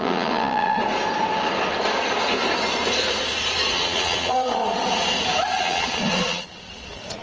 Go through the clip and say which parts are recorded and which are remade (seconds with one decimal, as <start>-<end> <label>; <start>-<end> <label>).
0.0-0.8 remade; 0.8-3.7 recorded; 3.7-4.6 remade; 4.6-5.6 recorded; 5.6-7.2 remade